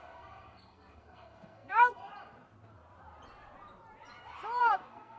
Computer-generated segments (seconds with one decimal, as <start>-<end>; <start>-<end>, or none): 0.0-2.1; 4.6-5.2